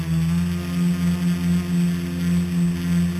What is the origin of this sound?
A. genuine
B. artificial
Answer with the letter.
A